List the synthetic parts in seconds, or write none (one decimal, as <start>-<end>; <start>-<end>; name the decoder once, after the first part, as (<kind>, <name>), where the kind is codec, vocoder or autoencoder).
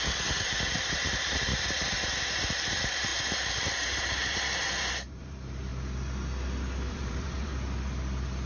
0.0-5.7 (vocoder, BigVGAN v2); 6.9-7.5